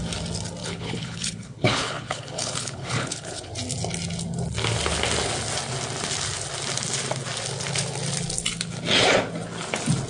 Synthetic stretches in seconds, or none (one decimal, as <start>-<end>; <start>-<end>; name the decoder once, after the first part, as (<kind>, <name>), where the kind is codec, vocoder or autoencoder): 0.6-3.5 (codec, HILCodec)